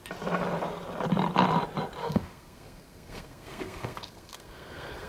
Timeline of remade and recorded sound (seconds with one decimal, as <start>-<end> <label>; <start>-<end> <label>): 0.0-2.0 recorded; 2.0-5.1 remade